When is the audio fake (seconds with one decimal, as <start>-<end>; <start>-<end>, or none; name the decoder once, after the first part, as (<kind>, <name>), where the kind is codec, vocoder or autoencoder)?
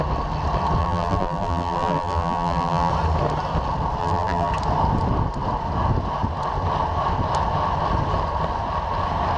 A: 0.8-2.9 (vocoder, BigVGAN v2); 4.0-4.5